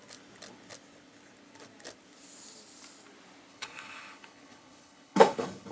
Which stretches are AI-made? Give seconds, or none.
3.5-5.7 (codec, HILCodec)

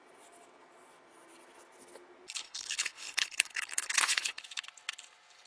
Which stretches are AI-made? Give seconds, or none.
2.4-4.4 (codec, HILCodec)

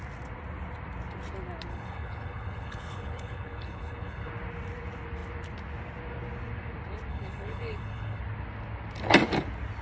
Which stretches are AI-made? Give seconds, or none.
1.7-4.3 (codec, HILCodec); 7.1-8.2

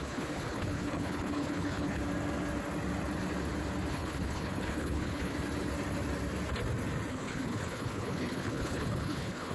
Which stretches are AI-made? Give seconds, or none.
0.0-2.0 (codec, HILCodec); 3.9-5.3; 7.1-9.5